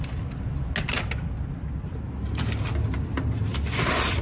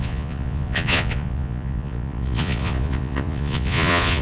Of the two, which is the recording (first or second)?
first